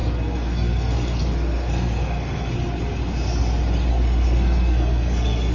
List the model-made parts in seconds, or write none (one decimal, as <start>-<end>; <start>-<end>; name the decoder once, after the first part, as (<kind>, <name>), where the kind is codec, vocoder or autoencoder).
0.0-2.5 (codec, SNAC); 3.9-5.5